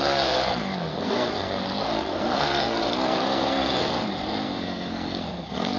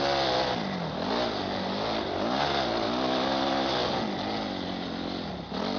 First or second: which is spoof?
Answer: first